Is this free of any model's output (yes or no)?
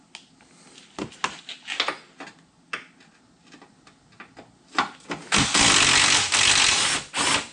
yes